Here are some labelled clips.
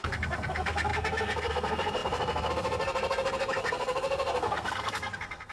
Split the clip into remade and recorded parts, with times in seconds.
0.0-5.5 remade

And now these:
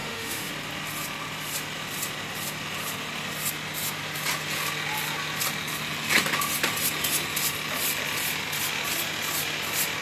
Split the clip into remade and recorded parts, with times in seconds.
0.0-0.5 remade; 0.5-10.0 recorded

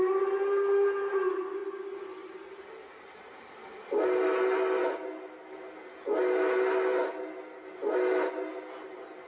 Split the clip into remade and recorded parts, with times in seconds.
0.0-9.3 recorded

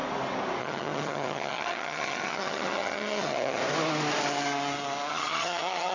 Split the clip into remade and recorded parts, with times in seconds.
0.0-0.6 recorded; 0.6-3.6 remade; 3.6-5.1 recorded; 5.1-5.9 remade